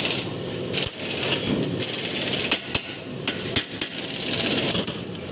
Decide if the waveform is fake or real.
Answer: real